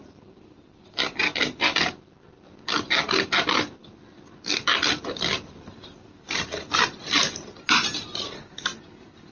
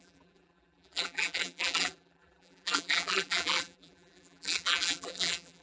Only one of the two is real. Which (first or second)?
first